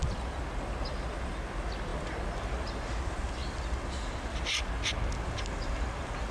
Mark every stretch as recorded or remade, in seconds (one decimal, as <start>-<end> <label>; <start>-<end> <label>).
0.0-6.3 recorded